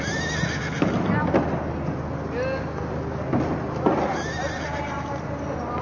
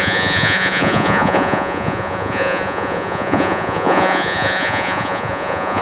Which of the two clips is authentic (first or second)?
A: first